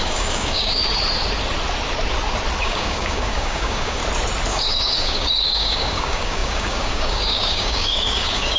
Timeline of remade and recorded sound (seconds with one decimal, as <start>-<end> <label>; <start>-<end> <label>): 0.0-0.8 remade; 0.8-2.6 recorded; 2.6-4.0 remade; 4.0-4.5 recorded; 4.5-8.6 remade